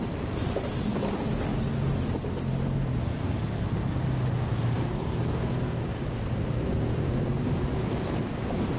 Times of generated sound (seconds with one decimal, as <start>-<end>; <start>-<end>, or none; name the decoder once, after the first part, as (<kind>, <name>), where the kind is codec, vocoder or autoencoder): 0.0-0.9 (vocoder, BigVGAN v2); 4.5-8.8